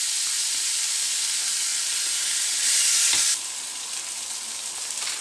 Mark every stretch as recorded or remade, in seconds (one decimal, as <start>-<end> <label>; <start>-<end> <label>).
0.0-1.7 remade; 1.7-4.8 recorded; 4.8-5.2 remade